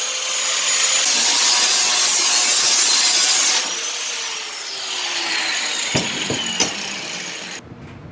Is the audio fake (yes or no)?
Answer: no